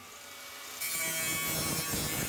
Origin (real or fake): real